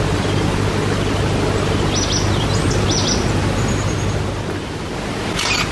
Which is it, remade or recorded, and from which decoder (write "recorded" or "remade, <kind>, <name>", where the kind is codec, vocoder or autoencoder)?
recorded